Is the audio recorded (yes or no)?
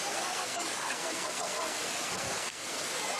no